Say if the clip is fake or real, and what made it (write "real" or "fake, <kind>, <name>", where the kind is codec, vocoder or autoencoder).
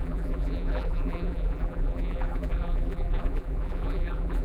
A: fake, vocoder, BigVGAN v2